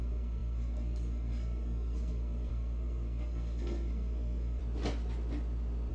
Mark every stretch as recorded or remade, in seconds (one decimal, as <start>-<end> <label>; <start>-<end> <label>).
0.0-4.6 remade; 4.6-5.9 recorded